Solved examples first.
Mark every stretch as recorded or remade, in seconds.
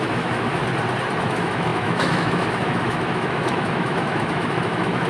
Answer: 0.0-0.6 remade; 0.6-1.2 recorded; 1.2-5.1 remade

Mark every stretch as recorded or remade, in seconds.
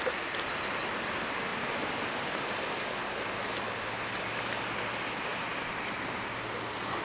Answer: 0.0-7.0 recorded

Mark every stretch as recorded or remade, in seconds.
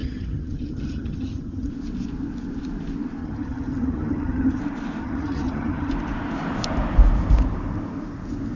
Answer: 0.0-1.7 remade; 1.7-3.2 recorded; 3.2-4.6 remade; 4.6-5.0 recorded; 5.0-5.9 remade; 5.9-8.6 recorded